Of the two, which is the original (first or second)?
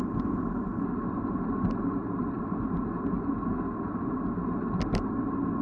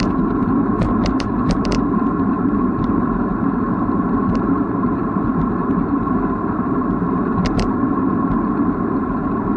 first